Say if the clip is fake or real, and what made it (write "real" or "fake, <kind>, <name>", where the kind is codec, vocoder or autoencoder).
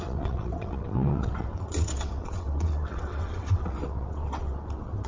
fake, vocoder, WaveNeXt